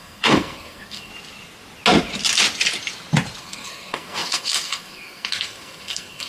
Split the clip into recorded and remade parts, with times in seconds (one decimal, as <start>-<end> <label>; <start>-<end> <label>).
0.0-1.1 remade; 1.1-3.4 recorded; 3.4-6.3 remade